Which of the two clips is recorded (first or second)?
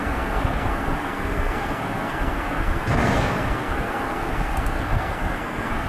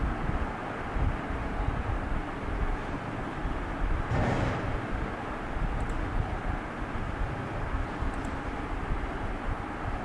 second